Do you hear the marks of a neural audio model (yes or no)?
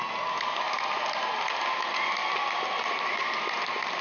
no